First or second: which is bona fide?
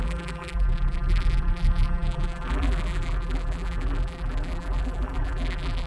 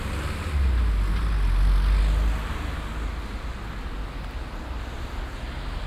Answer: second